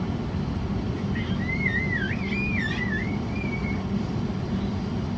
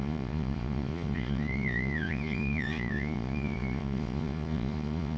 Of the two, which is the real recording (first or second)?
first